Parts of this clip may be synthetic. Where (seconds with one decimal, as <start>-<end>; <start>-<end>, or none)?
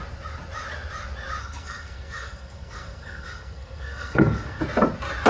1.4-4.6